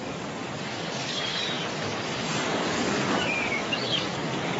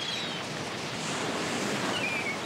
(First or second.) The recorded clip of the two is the second